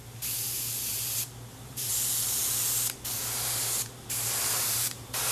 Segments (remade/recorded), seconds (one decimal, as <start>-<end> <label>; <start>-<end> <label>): 0.0-1.5 recorded; 1.5-1.9 remade; 1.9-4.4 recorded; 4.4-5.3 remade